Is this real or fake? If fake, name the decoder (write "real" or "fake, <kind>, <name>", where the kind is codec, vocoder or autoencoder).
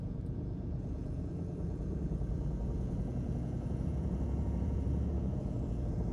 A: fake, vocoder, Vocos